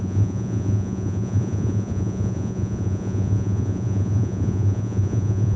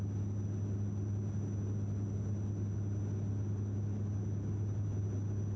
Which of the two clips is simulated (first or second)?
first